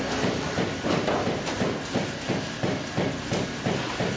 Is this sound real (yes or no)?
yes